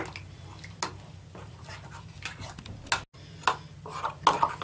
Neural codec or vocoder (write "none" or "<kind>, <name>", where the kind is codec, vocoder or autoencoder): none